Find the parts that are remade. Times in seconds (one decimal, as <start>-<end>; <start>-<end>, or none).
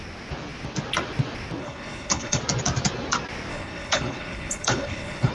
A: 1.6-2.4; 3.5-5.3